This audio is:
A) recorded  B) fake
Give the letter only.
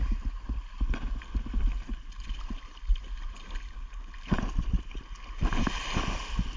A